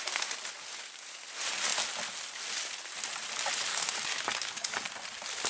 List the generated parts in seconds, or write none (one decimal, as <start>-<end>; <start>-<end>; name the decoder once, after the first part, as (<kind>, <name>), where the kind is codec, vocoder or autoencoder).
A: 3.7-4.8 (codec, DAC)